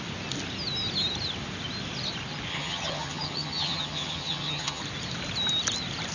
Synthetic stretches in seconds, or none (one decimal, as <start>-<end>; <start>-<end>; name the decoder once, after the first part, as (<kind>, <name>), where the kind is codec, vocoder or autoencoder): 2.5-4.8 (vocoder, HiFi-GAN)